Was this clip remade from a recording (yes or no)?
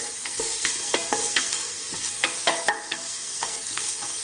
yes